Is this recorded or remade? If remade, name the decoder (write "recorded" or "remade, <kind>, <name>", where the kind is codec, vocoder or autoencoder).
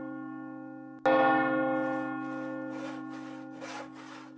recorded